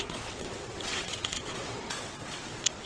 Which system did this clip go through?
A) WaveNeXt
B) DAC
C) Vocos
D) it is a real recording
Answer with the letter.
A